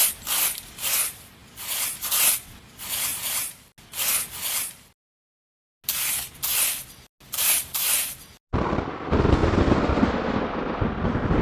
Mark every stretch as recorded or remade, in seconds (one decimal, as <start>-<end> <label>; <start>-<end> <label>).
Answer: 0.0-3.1 recorded; 3.1-3.7 remade; 3.7-7.4 recorded; 7.4-8.3 remade; 8.3-11.4 recorded